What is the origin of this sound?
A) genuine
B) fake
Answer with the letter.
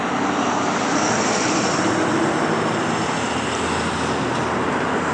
A